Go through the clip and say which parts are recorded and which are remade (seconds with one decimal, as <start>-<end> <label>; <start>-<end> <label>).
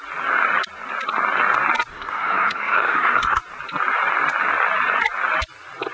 0.0-1.9 recorded; 1.9-3.4 remade; 3.4-5.9 recorded